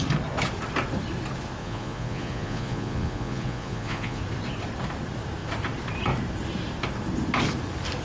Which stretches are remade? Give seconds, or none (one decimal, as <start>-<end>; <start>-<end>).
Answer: 1.6-4.2